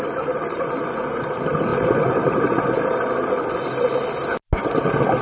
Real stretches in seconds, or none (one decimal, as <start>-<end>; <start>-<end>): 0.0-5.2